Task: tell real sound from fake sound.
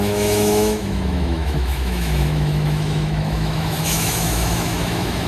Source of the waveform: fake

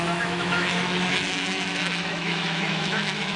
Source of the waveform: fake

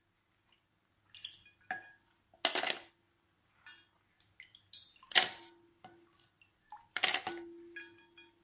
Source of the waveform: real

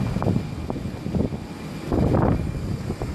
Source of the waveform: real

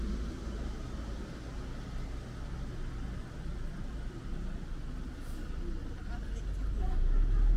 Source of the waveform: real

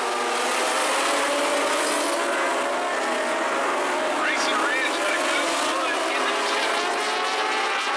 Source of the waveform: real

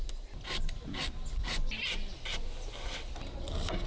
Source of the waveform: real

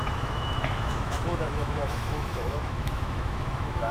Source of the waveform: fake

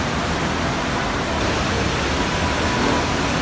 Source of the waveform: real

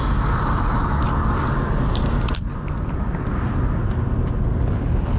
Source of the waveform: real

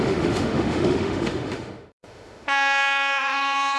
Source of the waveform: fake